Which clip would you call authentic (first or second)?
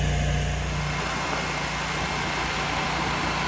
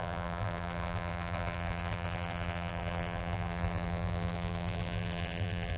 first